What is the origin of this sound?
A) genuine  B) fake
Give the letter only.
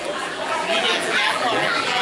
B